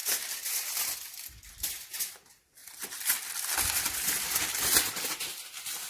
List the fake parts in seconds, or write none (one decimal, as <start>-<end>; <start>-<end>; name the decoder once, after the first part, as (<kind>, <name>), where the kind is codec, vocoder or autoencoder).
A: none